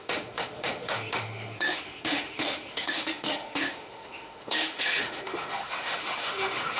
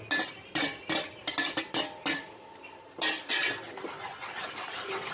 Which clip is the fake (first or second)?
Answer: first